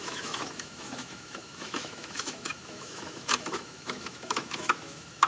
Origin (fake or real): fake